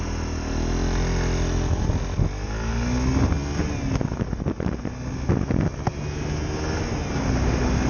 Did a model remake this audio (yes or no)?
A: no